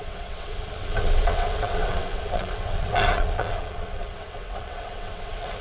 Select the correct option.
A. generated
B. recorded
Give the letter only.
A